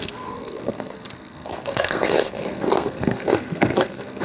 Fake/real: fake